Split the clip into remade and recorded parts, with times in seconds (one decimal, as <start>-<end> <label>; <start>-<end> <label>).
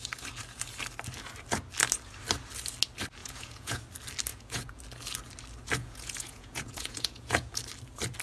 0.0-3.2 recorded; 3.2-3.8 remade; 3.8-4.3 recorded; 4.3-4.8 remade; 4.8-5.8 recorded; 5.8-7.6 remade; 7.6-8.2 recorded